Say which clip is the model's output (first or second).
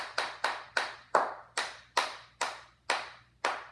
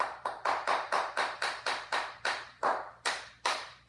second